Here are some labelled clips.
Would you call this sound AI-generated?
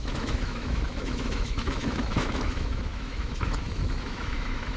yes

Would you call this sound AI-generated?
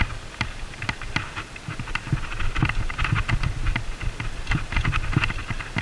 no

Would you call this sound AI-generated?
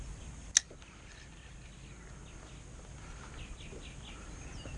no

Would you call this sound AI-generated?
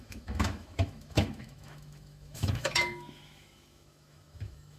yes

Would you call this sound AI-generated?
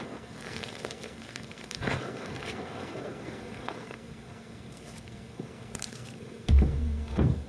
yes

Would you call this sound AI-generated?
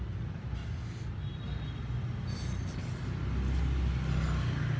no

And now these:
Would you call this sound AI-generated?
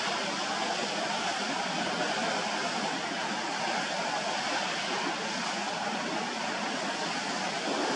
no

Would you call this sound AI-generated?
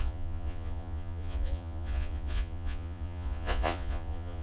yes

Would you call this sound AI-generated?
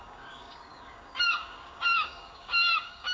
yes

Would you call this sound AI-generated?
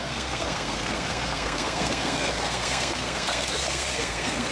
yes